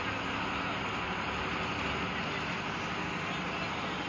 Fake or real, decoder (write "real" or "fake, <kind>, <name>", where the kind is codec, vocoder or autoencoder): real